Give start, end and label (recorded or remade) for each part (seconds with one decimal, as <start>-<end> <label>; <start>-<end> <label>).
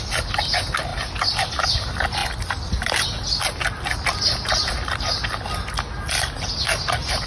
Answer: 0.0-7.3 recorded